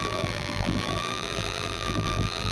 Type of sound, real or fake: fake